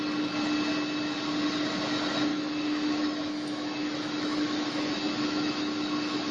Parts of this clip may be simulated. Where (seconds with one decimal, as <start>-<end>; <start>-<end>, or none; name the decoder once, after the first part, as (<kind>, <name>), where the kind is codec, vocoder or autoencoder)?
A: 2.3-6.3 (autoencoder, DAC-VAE)